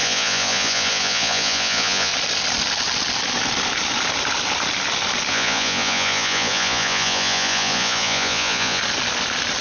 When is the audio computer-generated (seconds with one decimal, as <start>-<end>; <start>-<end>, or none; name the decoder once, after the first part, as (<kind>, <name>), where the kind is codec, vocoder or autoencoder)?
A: 0.0-2.1 (vocoder, Vocos); 5.3-8.8